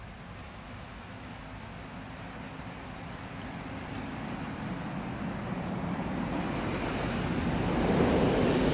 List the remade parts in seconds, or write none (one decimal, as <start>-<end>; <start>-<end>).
0.4-1.4